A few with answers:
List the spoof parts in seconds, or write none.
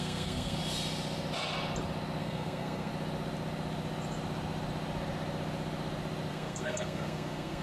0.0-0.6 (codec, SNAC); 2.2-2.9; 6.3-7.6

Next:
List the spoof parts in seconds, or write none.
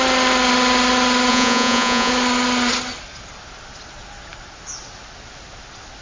1.3-2.1 (vocoder, Vocos)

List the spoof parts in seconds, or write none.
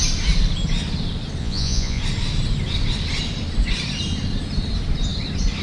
1.4-2.0 (vocoder, Vocos)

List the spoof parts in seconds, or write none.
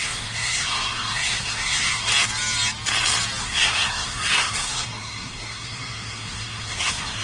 0.0-2.1 (codec, SNAC); 3.4-7.2